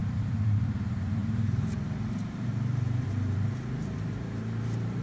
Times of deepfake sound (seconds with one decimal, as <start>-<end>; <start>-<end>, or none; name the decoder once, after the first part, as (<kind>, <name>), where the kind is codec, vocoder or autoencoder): 0.0-5.0 (vocoder, BigVGAN v2)